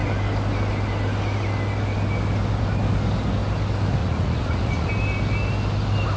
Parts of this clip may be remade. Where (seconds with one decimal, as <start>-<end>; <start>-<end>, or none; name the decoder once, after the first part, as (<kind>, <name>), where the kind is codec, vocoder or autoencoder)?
4.0-4.9 (vocoder, Vocos)